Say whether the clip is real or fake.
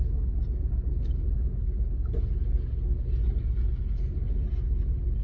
real